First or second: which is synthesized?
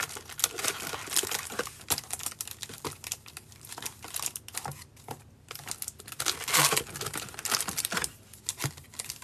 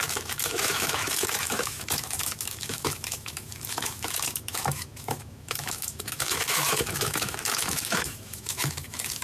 second